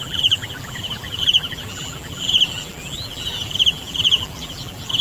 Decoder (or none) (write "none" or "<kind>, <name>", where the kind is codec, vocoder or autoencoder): vocoder, BigVGAN v2